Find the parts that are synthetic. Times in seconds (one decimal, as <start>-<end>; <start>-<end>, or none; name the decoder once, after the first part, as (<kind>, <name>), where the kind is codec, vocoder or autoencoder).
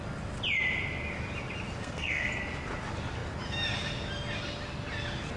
1.8-2.3 (codec, SNAC)